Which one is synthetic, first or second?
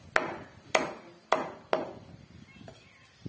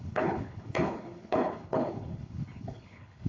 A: second